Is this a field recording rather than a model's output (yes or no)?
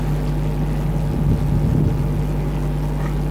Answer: yes